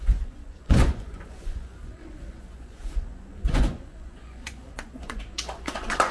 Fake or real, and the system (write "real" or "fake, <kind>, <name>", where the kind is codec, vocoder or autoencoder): fake, vocoder, Vocos